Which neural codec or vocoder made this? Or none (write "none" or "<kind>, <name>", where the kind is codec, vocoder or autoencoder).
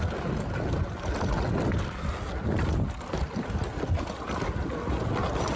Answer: none